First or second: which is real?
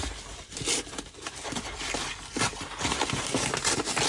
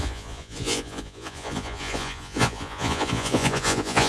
first